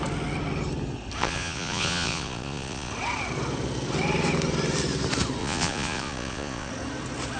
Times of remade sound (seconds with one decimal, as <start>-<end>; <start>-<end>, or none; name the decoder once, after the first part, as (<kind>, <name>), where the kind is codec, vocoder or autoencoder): 1.2-2.9 (vocoder, Vocos); 5.4-6.7